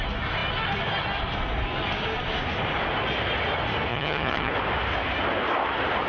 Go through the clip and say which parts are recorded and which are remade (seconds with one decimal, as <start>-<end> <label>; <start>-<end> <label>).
0.0-3.9 recorded; 3.9-4.5 remade; 4.5-6.1 recorded